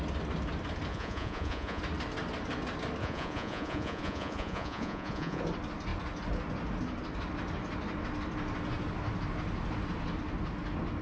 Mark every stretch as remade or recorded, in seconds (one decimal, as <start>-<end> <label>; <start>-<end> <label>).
0.0-0.9 recorded; 0.9-1.8 remade; 1.8-3.0 recorded; 3.0-5.4 remade; 5.4-11.0 recorded